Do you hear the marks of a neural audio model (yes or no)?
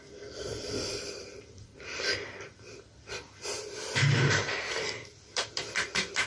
yes